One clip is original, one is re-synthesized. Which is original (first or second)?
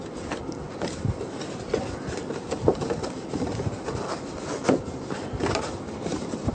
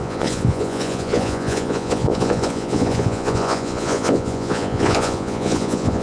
first